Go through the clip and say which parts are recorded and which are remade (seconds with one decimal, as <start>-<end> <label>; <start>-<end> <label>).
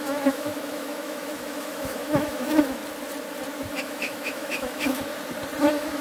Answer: 0.0-2.8 remade; 2.8-3.8 recorded; 3.8-5.1 remade; 5.1-5.6 recorded; 5.6-6.0 remade